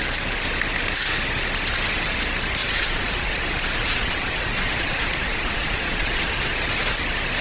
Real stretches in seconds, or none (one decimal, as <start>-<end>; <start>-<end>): 0.0-2.6; 3.4-3.9; 6.5-7.4